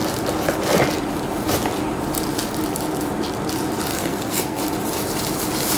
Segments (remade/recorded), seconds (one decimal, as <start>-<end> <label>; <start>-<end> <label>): 0.0-3.9 recorded; 3.9-4.6 remade; 4.6-5.8 recorded